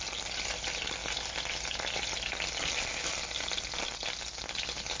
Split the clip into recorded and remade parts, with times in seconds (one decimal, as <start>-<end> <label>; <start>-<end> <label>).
0.0-5.0 recorded